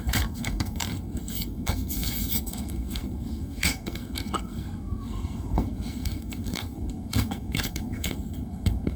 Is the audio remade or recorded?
remade